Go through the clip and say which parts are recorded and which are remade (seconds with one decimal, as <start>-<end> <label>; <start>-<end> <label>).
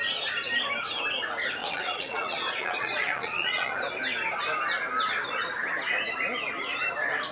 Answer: 0.0-1.6 recorded; 1.6-3.8 remade; 3.8-7.3 recorded